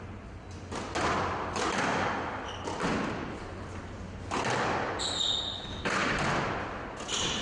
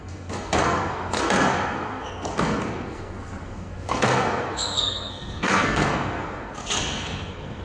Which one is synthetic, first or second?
second